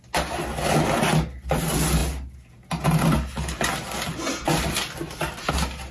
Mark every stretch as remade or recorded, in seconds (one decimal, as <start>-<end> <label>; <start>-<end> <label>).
0.0-5.9 recorded